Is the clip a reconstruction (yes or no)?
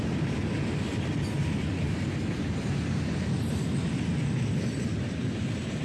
no